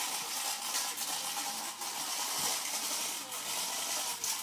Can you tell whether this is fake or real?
real